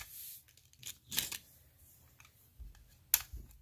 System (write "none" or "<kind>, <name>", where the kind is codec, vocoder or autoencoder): none